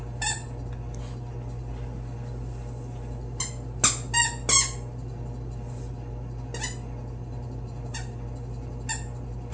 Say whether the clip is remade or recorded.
recorded